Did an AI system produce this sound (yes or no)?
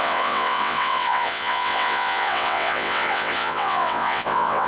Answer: yes